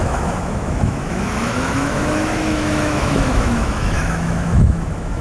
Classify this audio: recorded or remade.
remade